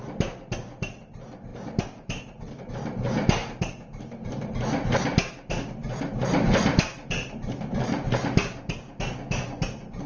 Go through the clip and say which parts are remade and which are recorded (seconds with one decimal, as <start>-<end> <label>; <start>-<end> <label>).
0.0-1.5 recorded; 1.5-2.7 remade; 2.7-3.4 recorded; 3.4-4.4 remade; 4.4-5.8 recorded; 5.8-9.0 remade; 9.0-10.1 recorded